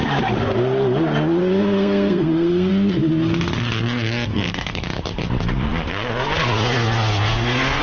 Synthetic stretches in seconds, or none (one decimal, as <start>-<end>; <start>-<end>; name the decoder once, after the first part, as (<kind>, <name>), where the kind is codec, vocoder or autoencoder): 1.4-2.7 (codec, SNAC); 4.3-4.9